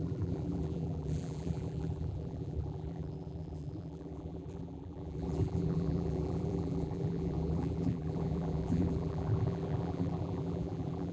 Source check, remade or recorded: remade